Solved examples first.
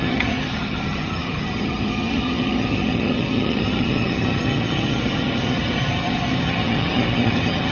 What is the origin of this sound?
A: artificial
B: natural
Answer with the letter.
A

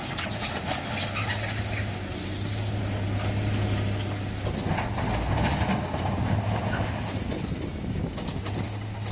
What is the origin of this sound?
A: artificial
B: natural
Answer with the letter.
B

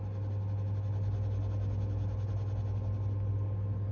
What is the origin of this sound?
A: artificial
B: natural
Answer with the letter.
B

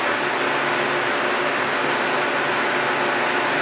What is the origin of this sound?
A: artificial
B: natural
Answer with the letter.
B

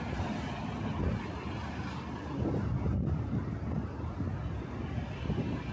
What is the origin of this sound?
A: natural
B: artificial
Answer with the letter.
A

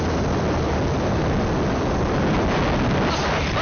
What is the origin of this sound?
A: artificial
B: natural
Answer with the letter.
B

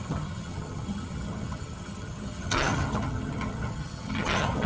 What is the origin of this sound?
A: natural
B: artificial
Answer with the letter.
B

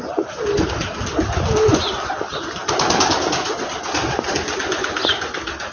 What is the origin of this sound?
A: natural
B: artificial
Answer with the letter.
A